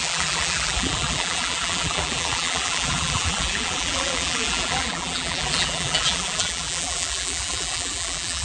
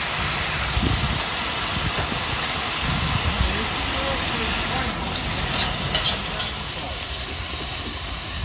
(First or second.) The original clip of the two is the second